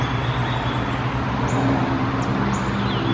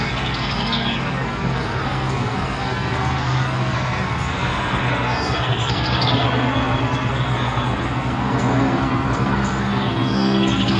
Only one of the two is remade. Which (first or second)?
second